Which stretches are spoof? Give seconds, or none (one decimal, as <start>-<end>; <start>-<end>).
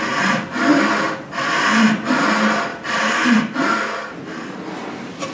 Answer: 0.7-1.2; 2.7-3.6